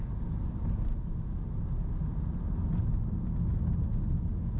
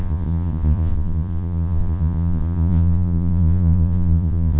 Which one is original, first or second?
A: first